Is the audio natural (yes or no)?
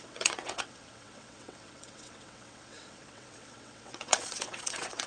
no